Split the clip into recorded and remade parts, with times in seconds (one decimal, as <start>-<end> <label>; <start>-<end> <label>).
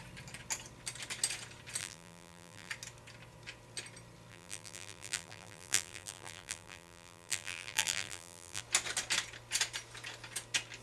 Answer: 0.0-1.8 recorded; 1.8-2.7 remade; 2.7-4.3 recorded; 4.3-8.6 remade; 8.6-10.8 recorded